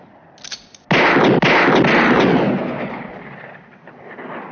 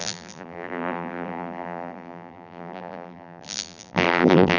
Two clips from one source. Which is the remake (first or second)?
second